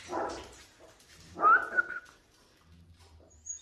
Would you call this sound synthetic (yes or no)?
yes